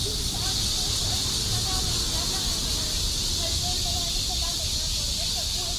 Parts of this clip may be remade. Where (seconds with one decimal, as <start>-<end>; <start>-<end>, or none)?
none